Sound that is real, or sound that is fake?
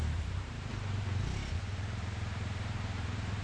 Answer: fake